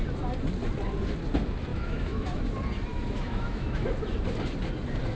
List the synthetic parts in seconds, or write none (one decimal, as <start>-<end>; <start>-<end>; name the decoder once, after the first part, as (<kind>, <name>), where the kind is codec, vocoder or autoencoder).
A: 1.7-2.5 (autoencoder, DAC-VAE); 2.9-3.9